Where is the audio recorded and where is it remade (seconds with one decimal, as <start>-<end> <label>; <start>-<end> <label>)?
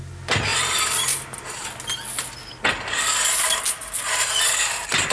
0.0-5.1 recorded